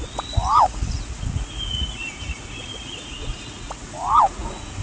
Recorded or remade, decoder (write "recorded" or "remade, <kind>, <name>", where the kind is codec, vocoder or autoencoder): remade, vocoder, Vocos